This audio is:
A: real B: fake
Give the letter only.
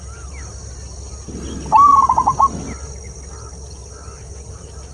A